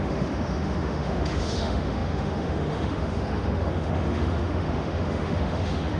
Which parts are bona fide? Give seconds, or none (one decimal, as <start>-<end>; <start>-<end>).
none